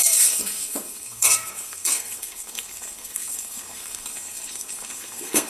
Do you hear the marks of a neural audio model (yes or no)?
yes